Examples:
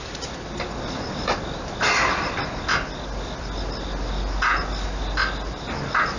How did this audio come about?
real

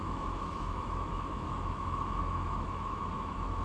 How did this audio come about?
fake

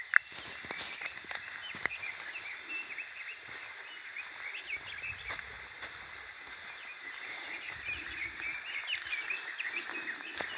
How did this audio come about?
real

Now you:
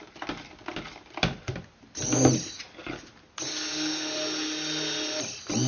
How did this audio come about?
real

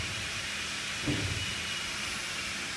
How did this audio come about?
real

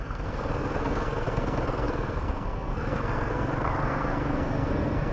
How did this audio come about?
fake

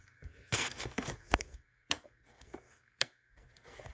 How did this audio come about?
fake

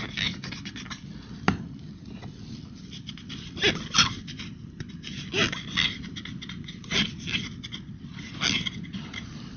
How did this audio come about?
real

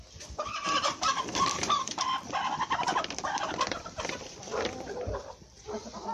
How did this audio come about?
fake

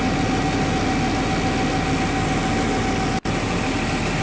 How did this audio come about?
real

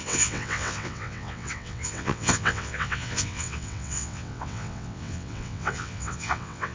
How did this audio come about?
fake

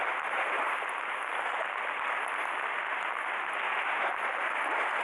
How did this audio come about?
real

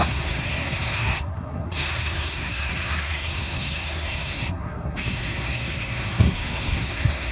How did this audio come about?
fake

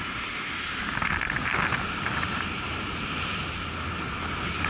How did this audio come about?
real